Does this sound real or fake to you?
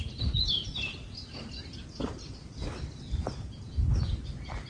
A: real